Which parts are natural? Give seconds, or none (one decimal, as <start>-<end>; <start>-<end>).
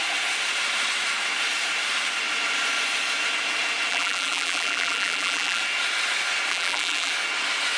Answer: 0.0-3.9; 5.6-6.5; 7.1-7.8